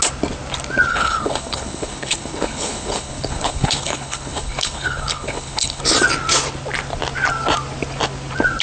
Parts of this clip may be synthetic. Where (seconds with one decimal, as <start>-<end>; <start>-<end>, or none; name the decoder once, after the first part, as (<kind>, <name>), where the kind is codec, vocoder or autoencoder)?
0.9-5.8 (codec, HILCodec)

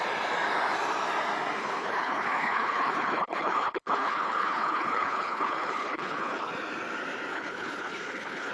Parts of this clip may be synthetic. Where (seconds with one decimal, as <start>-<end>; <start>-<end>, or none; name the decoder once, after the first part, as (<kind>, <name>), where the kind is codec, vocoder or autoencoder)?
1.6-6.5 (codec, HILCodec); 7.3-8.5

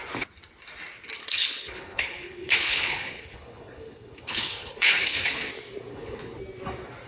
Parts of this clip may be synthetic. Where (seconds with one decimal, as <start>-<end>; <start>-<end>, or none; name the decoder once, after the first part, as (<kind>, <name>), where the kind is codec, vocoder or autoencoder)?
1.2-5.5 (codec, HILCodec); 5.9-6.4